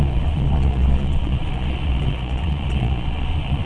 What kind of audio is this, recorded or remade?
remade